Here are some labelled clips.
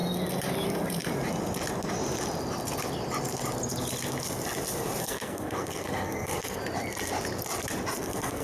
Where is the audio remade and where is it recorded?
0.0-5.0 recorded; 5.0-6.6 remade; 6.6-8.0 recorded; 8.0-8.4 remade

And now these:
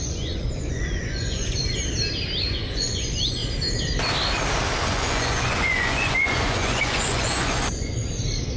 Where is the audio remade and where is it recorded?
0.0-1.7 remade; 1.7-2.5 recorded; 2.5-3.4 remade; 3.4-4.8 recorded; 4.8-8.0 remade; 8.0-8.6 recorded

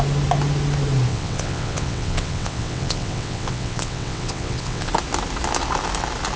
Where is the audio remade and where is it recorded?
0.0-1.1 recorded; 1.1-4.9 remade; 4.9-6.4 recorded

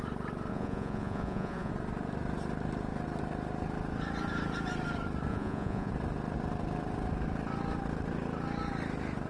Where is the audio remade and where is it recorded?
0.0-0.5 recorded; 0.5-1.7 remade; 1.7-5.3 recorded; 5.3-5.9 remade; 5.9-9.3 recorded

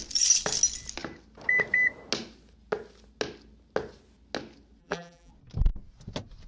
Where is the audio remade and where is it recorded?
0.0-4.8 recorded; 4.8-5.3 remade; 5.3-6.5 recorded

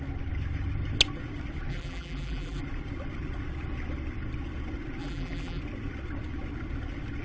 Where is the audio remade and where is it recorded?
0.0-1.7 recorded; 1.7-2.6 remade; 2.6-5.0 recorded; 5.0-5.6 remade; 5.6-7.2 recorded

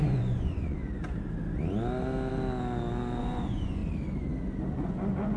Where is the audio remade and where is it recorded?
0.0-0.8 remade; 0.8-3.2 recorded; 3.2-3.8 remade; 3.8-4.7 recorded; 4.7-5.4 remade